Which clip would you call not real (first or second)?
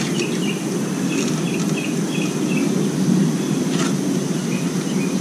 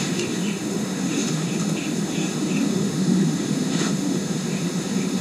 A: second